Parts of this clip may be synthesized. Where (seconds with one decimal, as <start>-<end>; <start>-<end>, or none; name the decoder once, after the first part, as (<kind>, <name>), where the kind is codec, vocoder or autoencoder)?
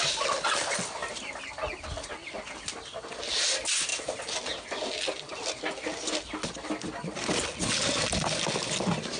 none